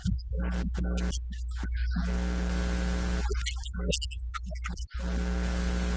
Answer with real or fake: real